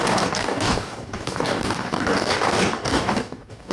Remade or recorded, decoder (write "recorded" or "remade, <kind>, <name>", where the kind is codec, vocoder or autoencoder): remade, codec, DAC